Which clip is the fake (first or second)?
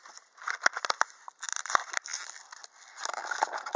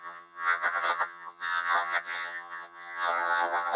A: second